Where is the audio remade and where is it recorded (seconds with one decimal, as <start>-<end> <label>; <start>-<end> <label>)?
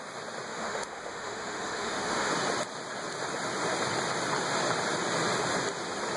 0.0-0.5 recorded; 0.5-2.3 remade; 2.3-6.2 recorded